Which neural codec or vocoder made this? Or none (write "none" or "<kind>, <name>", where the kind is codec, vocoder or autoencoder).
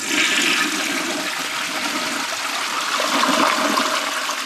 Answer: none